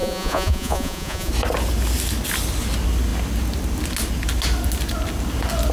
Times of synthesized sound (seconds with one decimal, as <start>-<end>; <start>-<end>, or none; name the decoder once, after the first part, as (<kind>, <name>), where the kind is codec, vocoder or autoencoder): 0.0-1.3 (vocoder, Vocos)